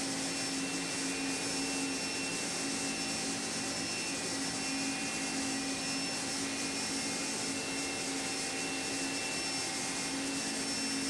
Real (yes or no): yes